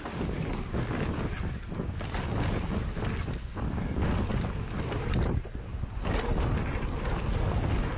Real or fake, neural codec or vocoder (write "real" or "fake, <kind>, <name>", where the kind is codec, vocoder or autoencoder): real